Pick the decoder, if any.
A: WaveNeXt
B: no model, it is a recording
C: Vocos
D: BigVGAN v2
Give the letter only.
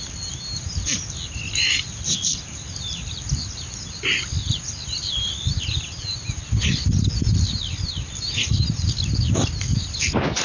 B